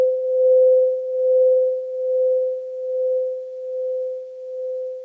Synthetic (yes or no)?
no